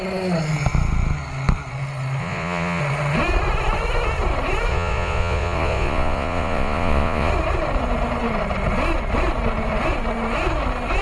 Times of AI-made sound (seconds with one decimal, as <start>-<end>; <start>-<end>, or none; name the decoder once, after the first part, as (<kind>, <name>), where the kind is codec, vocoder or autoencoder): 2.2-2.8 (vocoder, Vocos); 4.7-7.3